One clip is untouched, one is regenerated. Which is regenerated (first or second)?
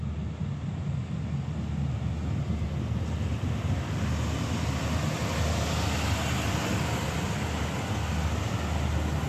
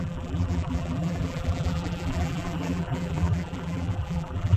second